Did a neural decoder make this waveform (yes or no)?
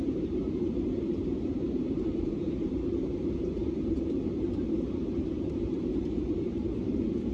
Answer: yes